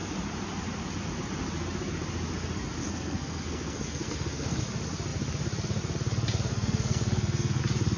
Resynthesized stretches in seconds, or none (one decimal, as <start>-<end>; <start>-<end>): 2.8-4.6; 6.5-7.6